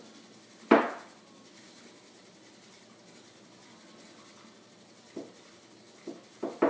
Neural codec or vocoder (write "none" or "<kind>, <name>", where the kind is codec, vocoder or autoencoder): none